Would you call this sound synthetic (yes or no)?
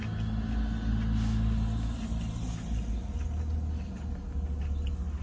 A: no